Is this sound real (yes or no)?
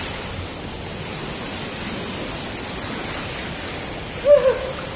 yes